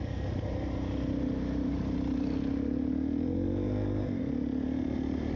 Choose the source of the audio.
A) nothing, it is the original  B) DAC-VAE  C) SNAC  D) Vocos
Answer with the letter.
A